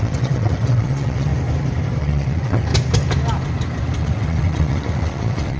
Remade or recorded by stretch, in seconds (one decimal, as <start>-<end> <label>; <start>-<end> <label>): 0.0-1.3 remade; 1.3-2.0 recorded; 2.0-2.7 remade; 2.7-4.0 recorded; 4.0-5.6 remade